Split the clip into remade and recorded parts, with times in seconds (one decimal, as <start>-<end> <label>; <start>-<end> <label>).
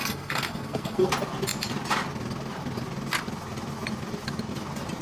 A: 0.0-1.1 remade; 1.1-5.0 recorded